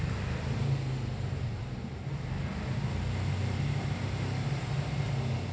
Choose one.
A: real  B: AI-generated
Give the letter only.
A